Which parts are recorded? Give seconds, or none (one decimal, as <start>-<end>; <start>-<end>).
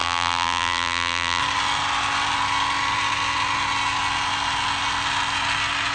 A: 1.4-5.9